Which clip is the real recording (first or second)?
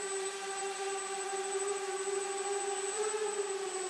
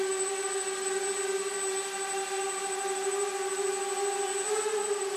second